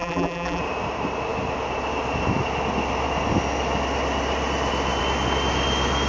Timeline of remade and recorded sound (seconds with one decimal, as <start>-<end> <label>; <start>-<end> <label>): 0.0-0.6 remade; 0.6-6.1 recorded